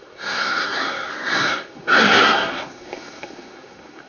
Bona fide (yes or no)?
no